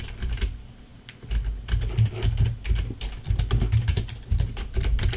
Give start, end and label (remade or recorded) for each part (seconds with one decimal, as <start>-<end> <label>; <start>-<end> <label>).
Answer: 0.0-0.9 remade; 0.9-4.0 recorded; 4.0-5.2 remade